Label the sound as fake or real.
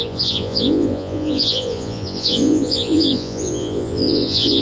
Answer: fake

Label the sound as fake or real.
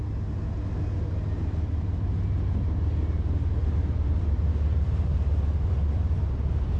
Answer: real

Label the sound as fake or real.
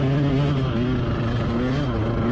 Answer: real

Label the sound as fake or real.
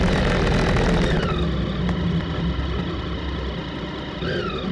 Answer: real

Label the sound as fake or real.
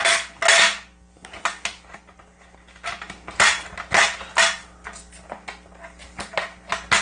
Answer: real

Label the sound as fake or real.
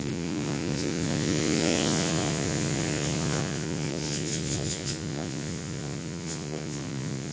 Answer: fake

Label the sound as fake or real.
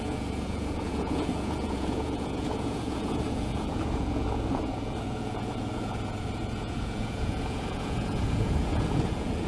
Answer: fake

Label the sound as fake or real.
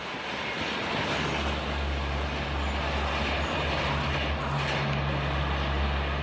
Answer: real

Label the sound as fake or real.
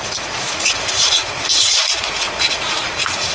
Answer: fake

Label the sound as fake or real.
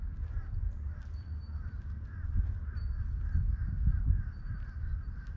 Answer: real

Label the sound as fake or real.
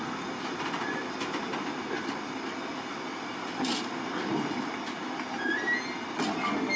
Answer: real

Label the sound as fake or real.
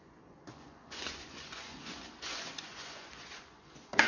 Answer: fake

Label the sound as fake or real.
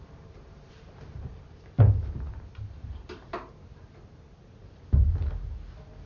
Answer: real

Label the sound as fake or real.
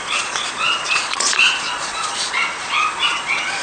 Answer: fake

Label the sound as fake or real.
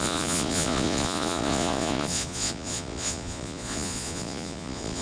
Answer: fake